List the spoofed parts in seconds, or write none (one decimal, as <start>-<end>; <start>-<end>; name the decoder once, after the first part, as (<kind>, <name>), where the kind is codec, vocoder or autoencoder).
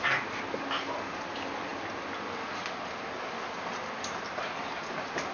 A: none